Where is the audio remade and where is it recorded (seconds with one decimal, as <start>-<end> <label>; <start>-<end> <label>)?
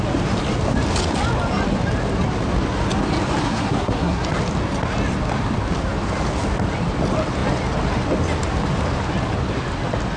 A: 0.0-3.4 recorded; 3.4-4.2 remade; 4.2-10.2 recorded